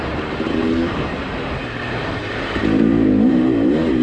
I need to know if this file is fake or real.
fake